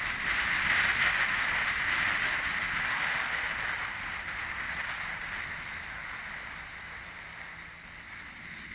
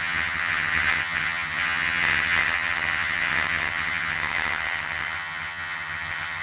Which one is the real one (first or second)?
first